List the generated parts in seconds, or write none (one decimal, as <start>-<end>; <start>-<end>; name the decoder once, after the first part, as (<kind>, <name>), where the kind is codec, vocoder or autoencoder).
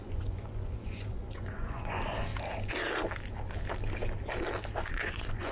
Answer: 0.0-2.3 (vocoder, Vocos); 4.9-5.5